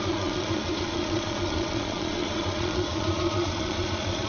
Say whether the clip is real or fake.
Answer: fake